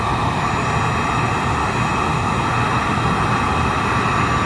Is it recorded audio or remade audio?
recorded